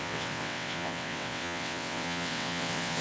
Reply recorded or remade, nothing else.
remade